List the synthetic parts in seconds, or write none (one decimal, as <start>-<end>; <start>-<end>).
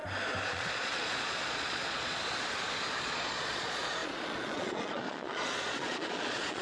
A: 0.5-2.2; 3.0-6.6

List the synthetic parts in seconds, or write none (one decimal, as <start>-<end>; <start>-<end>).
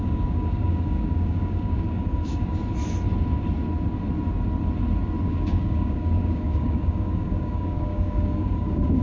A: 0.0-2.6; 5.3-9.0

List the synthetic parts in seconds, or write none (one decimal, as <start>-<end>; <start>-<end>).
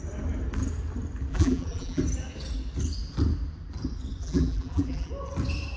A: 1.3-2.0; 4.2-5.1